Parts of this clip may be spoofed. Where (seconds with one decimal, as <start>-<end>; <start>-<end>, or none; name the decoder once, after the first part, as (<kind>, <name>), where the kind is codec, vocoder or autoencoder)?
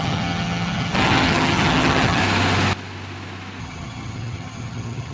0.0-2.2 (vocoder, HiFi-GAN); 3.6-5.1